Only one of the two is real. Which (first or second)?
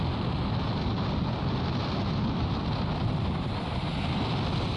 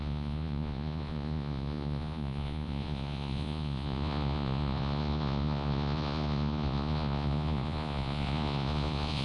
first